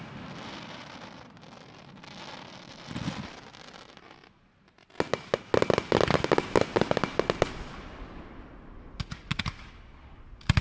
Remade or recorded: recorded